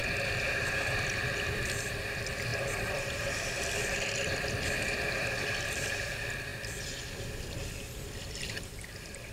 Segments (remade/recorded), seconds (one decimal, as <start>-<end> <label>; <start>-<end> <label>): 0.0-0.6 recorded; 0.6-6.5 remade; 6.5-7.6 recorded; 7.6-9.3 remade